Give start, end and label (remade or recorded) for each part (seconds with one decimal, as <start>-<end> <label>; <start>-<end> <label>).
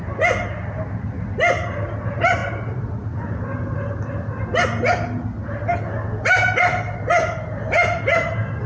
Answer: 0.0-8.7 recorded